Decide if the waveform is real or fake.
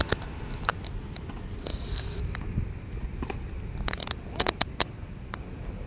real